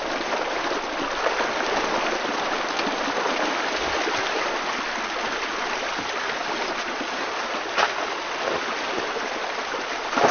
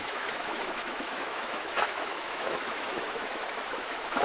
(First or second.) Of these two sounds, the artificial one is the second